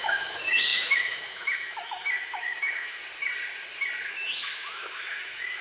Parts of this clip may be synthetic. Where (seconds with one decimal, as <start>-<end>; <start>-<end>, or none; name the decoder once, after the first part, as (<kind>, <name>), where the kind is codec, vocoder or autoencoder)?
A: 0.0-3.0 (autoencoder, DAC-VAE); 4.1-5.6